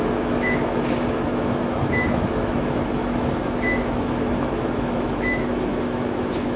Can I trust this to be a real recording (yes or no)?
no